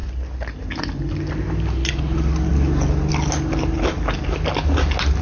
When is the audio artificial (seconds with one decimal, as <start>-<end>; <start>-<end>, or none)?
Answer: none